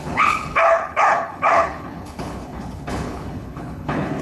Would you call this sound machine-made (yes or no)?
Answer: yes